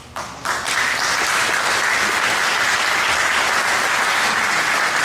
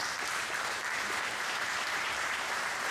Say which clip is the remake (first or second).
second